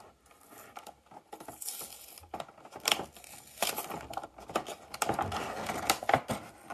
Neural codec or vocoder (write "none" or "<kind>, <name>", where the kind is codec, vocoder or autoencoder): none